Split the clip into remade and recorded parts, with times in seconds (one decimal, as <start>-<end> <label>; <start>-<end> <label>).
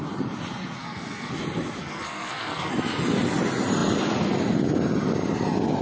0.0-0.8 recorded; 0.8-1.3 remade; 1.3-1.8 recorded; 1.8-2.7 remade; 2.7-5.8 recorded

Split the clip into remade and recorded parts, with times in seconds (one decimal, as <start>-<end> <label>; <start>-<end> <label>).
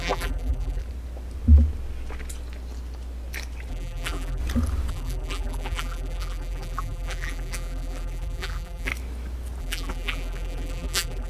0.0-0.8 remade; 0.8-3.7 recorded; 3.7-4.4 remade; 4.4-4.9 recorded; 4.9-8.9 remade; 8.9-9.6 recorded; 9.6-11.3 remade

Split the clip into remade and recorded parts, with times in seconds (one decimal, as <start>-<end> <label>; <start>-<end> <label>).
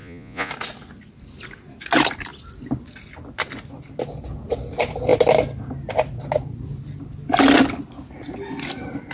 0.0-0.5 remade; 0.5-9.1 recorded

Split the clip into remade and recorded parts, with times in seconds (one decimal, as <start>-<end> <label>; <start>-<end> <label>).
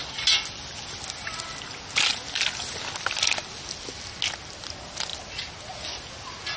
0.0-6.6 recorded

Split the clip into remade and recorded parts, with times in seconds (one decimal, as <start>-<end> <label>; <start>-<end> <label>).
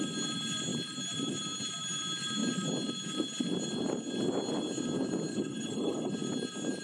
0.0-5.3 recorded; 5.3-6.1 remade; 6.1-6.8 recorded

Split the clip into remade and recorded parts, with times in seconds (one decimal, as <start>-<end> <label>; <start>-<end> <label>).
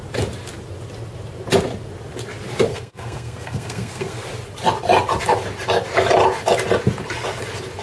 0.0-2.7 recorded; 2.7-4.2 remade; 4.2-7.8 recorded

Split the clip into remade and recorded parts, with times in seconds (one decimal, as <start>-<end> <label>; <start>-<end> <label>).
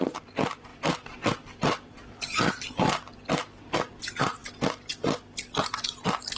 0.0-6.4 recorded